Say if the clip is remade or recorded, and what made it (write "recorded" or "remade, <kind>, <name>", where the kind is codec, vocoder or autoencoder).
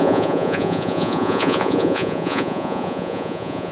remade, vocoder, Vocos